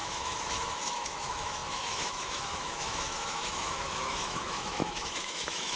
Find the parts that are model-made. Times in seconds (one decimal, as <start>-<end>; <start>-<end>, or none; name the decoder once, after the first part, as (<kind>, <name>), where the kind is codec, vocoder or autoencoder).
0.0-5.8 (autoencoder, DAC-VAE)